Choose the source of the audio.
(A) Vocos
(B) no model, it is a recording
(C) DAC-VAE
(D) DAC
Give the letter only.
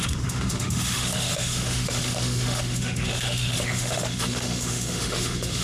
C